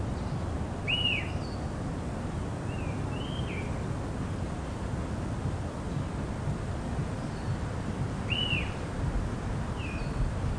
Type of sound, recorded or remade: recorded